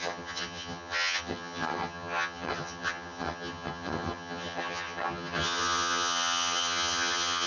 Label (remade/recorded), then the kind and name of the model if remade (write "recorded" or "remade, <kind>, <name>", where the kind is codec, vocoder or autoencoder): remade, vocoder, HiFi-GAN